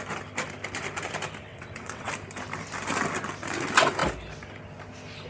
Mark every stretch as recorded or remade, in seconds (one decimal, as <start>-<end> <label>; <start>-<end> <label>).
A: 0.0-1.5 recorded; 1.5-2.1 remade; 2.1-5.3 recorded

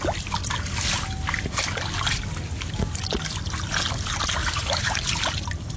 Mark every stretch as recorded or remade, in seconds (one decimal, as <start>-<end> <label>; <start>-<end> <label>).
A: 0.0-4.4 recorded; 4.4-5.1 remade; 5.1-5.8 recorded

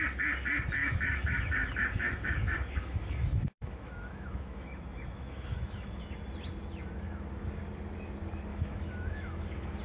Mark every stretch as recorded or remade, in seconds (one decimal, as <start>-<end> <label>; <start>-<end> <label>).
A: 0.0-0.8 recorded; 0.8-6.0 remade; 6.0-8.5 recorded; 8.5-9.8 remade

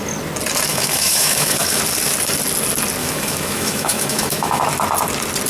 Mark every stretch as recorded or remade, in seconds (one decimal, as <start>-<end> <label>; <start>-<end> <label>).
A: 0.0-0.7 recorded; 0.7-1.8 remade; 1.8-3.0 recorded; 3.0-4.6 remade; 4.6-5.5 recorded